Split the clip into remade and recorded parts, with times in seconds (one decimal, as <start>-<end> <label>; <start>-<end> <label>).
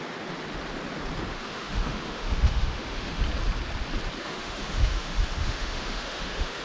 0.0-1.3 recorded; 1.3-3.2 remade; 3.2-4.2 recorded; 4.2-6.6 remade